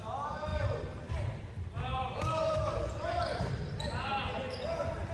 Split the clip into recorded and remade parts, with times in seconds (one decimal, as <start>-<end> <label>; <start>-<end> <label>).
0.0-0.5 recorded; 0.5-1.4 remade; 1.4-1.9 recorded; 1.9-3.9 remade; 3.9-5.1 recorded